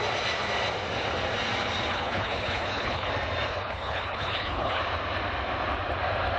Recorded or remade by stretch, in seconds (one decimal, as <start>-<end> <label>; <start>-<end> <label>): 0.0-1.9 recorded; 1.9-3.1 remade; 3.1-3.5 recorded; 3.5-4.8 remade; 4.8-6.4 recorded